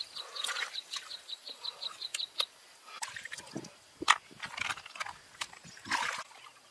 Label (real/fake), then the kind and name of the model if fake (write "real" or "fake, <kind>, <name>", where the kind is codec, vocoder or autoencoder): real